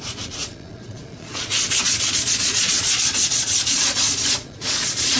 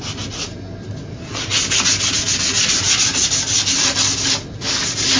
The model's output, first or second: first